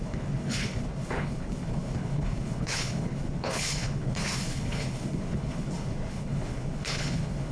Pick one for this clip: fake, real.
fake